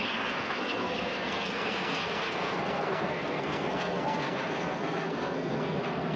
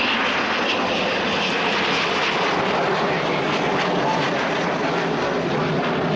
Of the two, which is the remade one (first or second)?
first